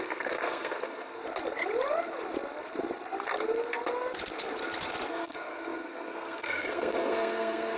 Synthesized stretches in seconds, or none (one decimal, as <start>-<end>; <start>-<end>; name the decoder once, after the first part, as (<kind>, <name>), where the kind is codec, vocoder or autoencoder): 0.0-1.2 (codec, SNAC); 5.1-7.8